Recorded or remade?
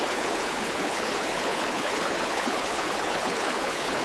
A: remade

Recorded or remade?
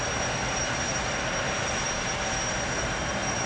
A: recorded